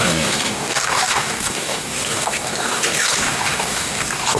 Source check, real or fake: fake